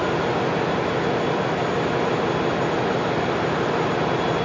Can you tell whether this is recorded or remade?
recorded